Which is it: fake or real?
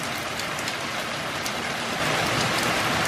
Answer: real